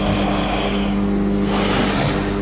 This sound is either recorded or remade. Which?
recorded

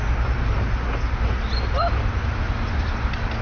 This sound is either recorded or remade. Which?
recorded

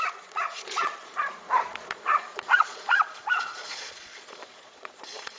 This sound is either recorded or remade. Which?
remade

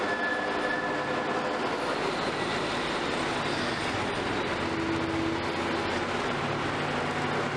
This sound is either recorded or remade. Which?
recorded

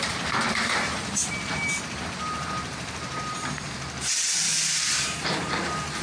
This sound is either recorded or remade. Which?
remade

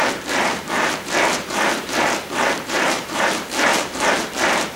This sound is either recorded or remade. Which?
remade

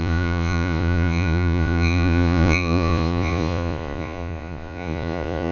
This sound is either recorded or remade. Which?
remade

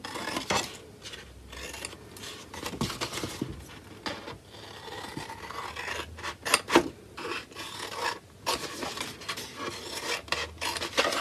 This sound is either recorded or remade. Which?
recorded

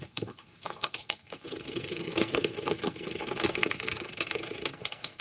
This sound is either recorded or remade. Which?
remade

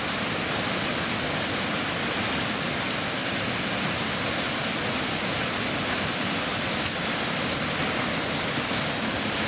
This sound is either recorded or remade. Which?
recorded